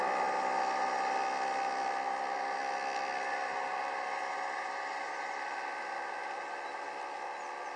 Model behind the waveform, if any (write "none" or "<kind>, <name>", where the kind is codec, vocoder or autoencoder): none